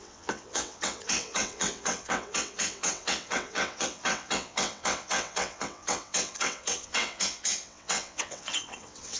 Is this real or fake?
fake